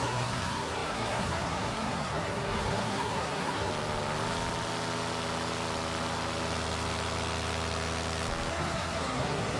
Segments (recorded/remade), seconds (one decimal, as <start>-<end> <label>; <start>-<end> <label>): 0.0-3.7 remade; 3.7-8.5 recorded; 8.5-9.6 remade